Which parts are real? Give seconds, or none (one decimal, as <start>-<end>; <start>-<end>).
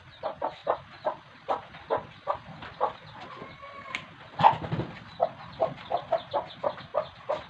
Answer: 0.0-7.5